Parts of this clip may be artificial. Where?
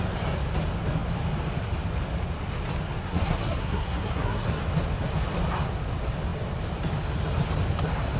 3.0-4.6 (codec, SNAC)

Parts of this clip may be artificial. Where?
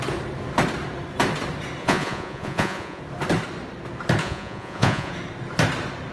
1.8-3.0 (vocoder, Vocos); 4.2-5.1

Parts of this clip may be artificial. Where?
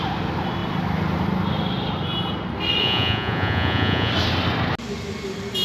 2.8-4.1 (vocoder, Vocos)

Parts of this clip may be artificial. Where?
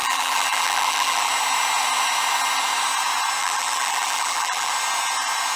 0.0-1.3 (vocoder, BigVGAN v2); 3.4-4.7